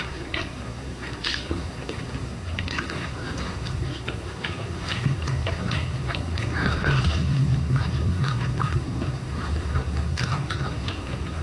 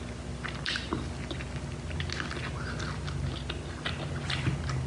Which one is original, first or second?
second